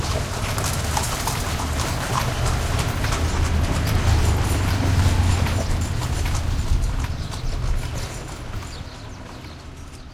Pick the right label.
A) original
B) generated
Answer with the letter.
A